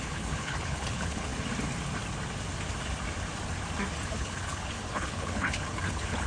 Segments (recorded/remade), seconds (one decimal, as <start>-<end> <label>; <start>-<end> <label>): 0.0-1.3 remade; 1.3-4.2 recorded; 4.2-6.3 remade